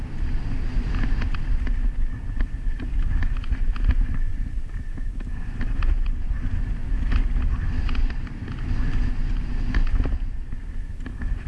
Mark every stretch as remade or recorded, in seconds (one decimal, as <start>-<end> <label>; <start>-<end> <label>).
0.0-4.3 recorded; 4.3-6.7 remade; 6.7-9.2 recorded; 9.2-10.5 remade; 10.5-11.5 recorded